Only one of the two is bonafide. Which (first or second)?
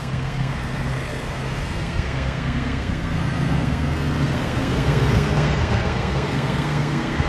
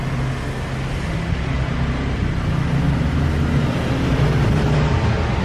second